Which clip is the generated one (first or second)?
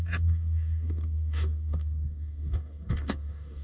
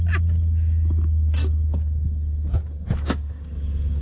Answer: first